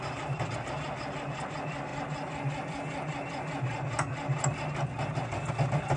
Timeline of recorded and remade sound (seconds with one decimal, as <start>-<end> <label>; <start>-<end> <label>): 0.0-6.0 recorded